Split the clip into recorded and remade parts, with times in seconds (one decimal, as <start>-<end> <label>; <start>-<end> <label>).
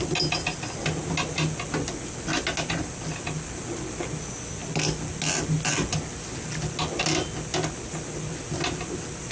0.0-9.3 recorded